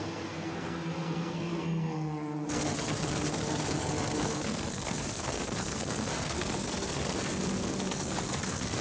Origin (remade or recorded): remade